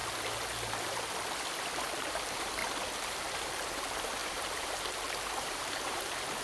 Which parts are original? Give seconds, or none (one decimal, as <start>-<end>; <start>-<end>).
0.0-2.0; 2.6-3.4